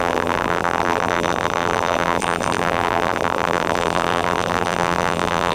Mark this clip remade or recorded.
remade